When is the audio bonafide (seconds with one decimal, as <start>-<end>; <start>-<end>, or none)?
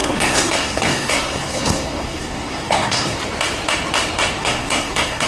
3.2-4.4